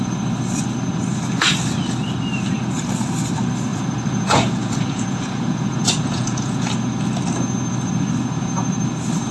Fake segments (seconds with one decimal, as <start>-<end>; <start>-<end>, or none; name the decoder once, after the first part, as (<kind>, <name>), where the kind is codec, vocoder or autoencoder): 3.7-6.7 (vocoder, Vocos)